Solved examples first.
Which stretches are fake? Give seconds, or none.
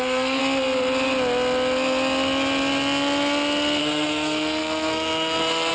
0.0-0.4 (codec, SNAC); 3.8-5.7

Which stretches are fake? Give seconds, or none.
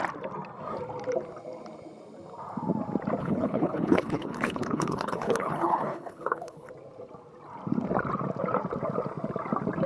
3.2-6.7 (codec, HILCodec)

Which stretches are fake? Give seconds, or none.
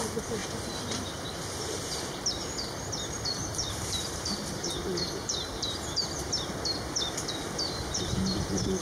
0.4-2.6 (vocoder, BigVGAN v2); 3.4-6.4